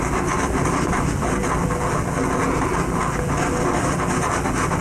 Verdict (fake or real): real